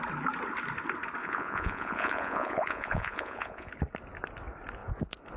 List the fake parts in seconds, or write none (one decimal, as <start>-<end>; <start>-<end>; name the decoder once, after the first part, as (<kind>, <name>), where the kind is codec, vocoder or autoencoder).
1.2-3.7 (vocoder, Vocos)